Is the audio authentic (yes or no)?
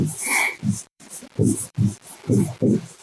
no